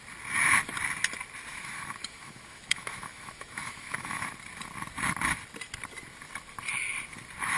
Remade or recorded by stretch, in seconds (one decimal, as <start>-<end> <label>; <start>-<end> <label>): 0.0-1.5 recorded; 1.5-4.3 remade; 4.3-7.6 recorded